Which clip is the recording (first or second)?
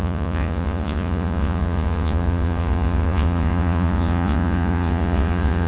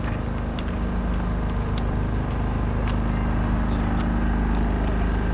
second